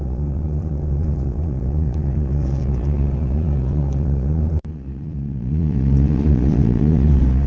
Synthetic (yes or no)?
yes